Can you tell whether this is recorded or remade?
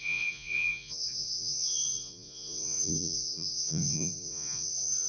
remade